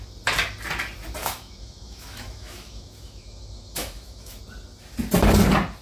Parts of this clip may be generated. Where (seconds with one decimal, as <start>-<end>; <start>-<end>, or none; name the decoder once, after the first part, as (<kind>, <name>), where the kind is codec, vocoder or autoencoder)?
1.2-4.4 (autoencoder, DAC-VAE)